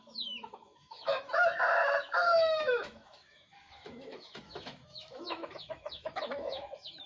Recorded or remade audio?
remade